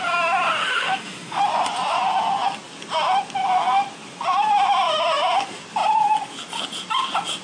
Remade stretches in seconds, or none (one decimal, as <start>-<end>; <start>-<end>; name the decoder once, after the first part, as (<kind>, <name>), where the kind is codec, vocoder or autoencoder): 0.6-1.4 (autoencoder, DAC-VAE)